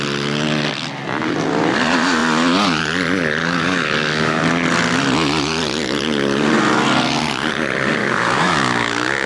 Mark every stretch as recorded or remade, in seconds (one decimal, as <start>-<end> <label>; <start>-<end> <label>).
0.0-3.4 recorded; 3.4-4.4 remade; 4.4-8.0 recorded; 8.0-9.3 remade

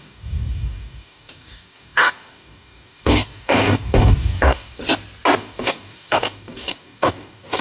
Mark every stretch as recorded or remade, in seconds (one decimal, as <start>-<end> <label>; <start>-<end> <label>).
0.0-4.8 remade; 4.8-5.4 recorded; 5.4-7.6 remade

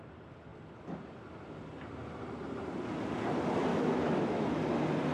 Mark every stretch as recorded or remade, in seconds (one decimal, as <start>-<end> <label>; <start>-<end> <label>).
0.0-3.7 recorded; 3.7-4.6 remade; 4.6-5.1 recorded

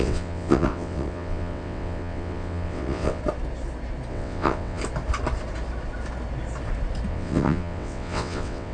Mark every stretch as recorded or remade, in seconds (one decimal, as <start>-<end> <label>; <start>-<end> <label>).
0.0-3.2 remade; 3.2-4.1 recorded; 4.1-4.8 remade; 4.8-7.1 recorded; 7.1-8.7 remade

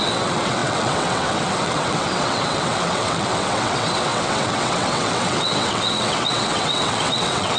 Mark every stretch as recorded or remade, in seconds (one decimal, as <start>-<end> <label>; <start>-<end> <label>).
0.0-7.6 remade

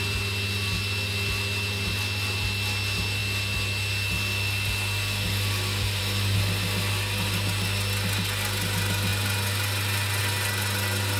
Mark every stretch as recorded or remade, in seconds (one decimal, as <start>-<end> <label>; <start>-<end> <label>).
0.0-11.2 recorded